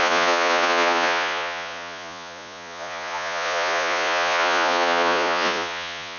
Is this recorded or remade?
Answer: remade